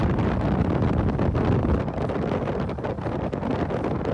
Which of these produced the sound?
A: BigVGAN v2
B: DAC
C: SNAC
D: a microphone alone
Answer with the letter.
D